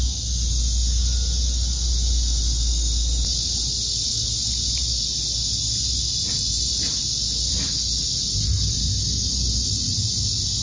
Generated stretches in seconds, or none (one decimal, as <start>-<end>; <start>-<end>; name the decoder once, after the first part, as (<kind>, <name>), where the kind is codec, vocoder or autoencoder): none